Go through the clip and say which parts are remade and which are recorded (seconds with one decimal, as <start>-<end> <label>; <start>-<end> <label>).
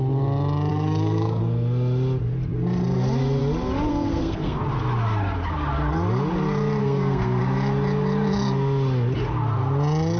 0.0-0.7 recorded; 0.7-1.4 remade; 1.4-3.9 recorded; 3.9-4.6 remade; 4.6-6.8 recorded; 6.8-7.4 remade; 7.4-10.2 recorded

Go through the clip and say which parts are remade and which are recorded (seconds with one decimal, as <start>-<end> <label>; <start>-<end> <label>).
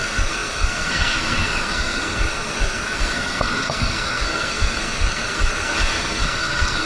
0.0-6.9 remade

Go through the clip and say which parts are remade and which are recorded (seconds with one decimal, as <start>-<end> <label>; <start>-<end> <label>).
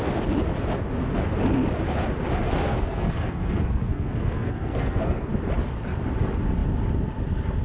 0.0-2.6 recorded; 2.6-5.3 remade; 5.3-7.6 recorded